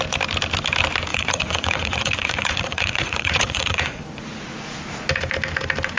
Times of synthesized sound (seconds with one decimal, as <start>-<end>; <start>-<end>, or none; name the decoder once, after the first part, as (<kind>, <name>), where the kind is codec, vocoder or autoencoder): 1.1-4.0 (vocoder, Vocos)